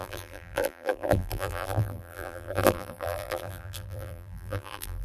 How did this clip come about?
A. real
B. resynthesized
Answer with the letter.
B